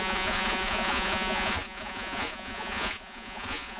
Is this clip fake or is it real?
fake